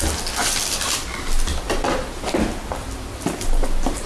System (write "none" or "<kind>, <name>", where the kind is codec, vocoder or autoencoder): none